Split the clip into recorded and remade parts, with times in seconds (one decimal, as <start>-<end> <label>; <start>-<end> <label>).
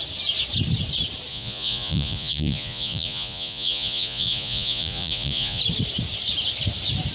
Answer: 0.0-1.3 recorded; 1.3-5.6 remade; 5.6-7.1 recorded